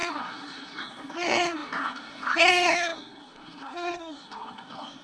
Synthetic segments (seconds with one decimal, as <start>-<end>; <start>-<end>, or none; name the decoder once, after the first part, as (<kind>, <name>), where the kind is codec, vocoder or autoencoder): 0.0-5.0 (codec, SNAC)